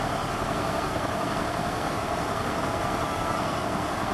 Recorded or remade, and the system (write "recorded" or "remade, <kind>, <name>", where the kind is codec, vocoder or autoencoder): remade, codec, SNAC